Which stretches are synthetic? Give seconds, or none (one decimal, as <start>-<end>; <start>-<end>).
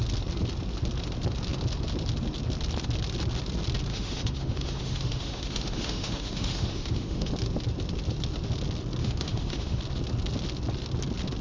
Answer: 3.9-7.3; 9.0-9.8